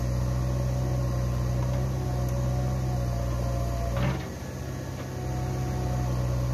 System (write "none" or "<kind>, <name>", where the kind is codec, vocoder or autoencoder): none